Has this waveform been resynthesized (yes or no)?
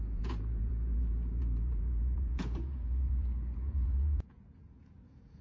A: yes